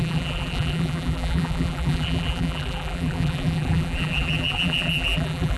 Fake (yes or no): yes